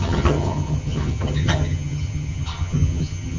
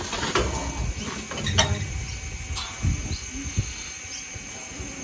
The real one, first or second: second